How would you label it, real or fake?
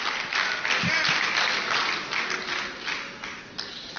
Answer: real